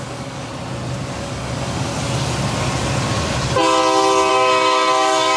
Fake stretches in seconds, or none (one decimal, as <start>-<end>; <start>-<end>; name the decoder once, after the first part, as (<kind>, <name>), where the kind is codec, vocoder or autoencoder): 0.0-0.5 (codec, DAC); 1.2-1.9; 4.3-5.4